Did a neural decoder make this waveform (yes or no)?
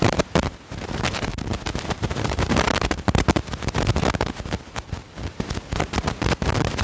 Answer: yes